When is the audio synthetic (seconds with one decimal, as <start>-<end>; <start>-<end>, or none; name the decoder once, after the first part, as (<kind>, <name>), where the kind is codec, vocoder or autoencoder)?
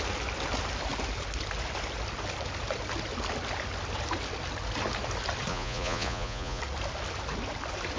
5.5-6.6 (vocoder, Vocos)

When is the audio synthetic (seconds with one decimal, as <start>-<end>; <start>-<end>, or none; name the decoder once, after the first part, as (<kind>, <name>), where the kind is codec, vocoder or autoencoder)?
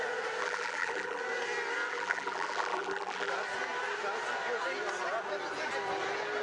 0.4-1.2 (vocoder, BigVGAN v2); 1.9-3.3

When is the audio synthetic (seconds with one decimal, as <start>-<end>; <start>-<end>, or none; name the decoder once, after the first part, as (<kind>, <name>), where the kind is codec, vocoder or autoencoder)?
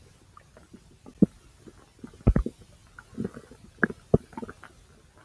none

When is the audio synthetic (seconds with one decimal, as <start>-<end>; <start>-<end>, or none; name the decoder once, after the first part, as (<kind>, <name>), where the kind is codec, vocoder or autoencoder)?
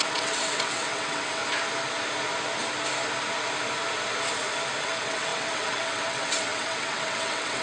0.0-1.4 (vocoder, WaveNeXt); 4.8-7.6